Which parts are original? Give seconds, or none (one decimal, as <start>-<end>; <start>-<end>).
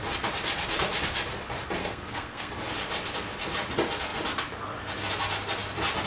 0.0-1.8; 2.5-6.1